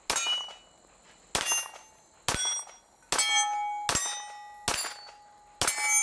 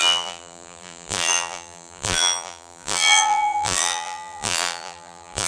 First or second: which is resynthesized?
second